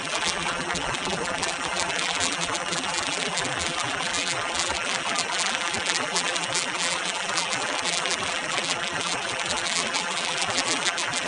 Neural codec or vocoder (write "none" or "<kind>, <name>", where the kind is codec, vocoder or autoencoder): vocoder, BigVGAN v2